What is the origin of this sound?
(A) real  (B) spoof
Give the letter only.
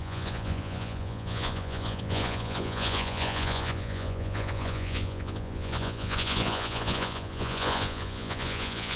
B